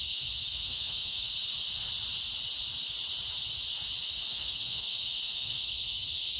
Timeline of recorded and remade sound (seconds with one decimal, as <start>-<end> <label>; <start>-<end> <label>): 0.0-1.3 remade; 1.3-4.3 recorded; 4.3-6.4 remade